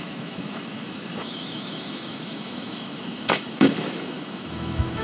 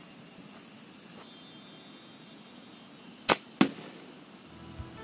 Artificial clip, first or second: first